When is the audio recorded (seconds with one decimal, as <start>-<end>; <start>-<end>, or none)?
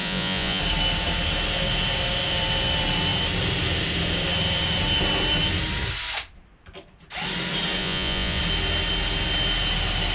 0.6-7.8; 8.4-10.1